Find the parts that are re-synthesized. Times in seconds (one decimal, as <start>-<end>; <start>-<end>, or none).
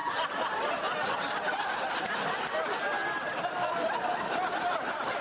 none